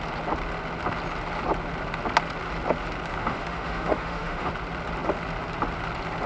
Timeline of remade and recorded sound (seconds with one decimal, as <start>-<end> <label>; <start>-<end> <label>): 0.0-3.2 recorded; 3.2-4.5 remade; 4.5-6.3 recorded